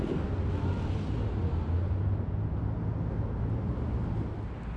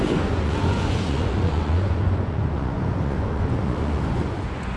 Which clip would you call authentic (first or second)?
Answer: first